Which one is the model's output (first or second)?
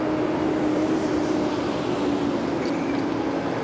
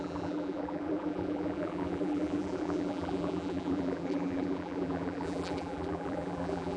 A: second